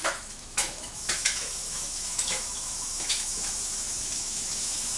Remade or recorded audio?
remade